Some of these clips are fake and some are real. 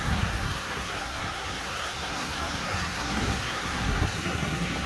fake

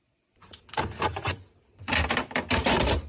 real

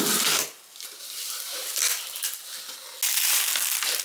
real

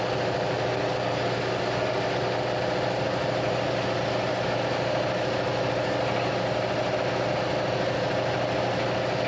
real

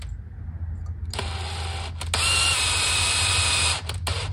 real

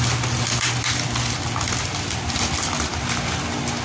real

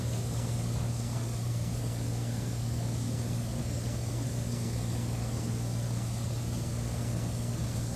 fake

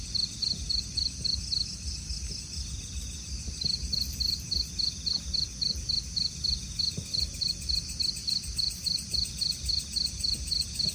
real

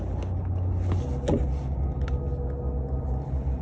real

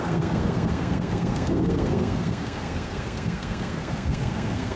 fake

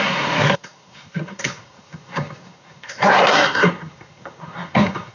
fake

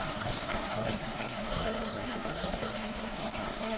fake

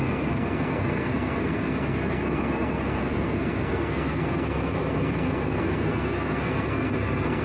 fake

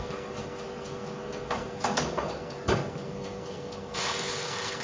fake